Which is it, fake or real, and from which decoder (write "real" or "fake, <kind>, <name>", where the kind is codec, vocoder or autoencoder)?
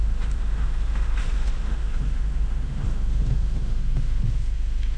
fake, autoencoder, DAC-VAE